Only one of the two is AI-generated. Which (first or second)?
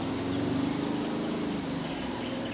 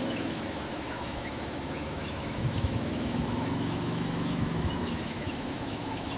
second